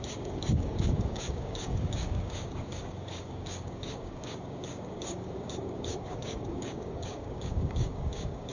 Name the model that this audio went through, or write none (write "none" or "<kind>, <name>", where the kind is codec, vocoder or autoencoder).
codec, DAC